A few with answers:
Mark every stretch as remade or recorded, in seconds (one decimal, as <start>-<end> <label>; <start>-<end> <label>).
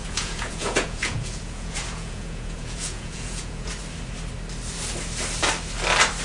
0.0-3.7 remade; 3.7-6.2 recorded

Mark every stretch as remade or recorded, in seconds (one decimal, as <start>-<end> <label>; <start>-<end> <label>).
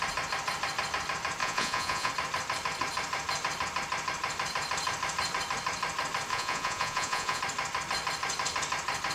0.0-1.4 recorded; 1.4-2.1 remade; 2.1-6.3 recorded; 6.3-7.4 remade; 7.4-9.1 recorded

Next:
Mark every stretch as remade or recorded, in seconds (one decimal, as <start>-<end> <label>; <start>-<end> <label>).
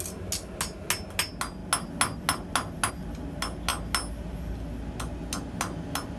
0.0-6.2 recorded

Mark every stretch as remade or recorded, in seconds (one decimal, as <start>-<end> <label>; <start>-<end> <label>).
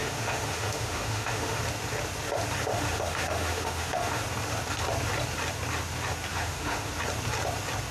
0.0-1.6 remade; 1.6-2.7 recorded; 2.7-4.2 remade; 4.2-6.3 recorded; 6.3-6.9 remade; 6.9-7.9 recorded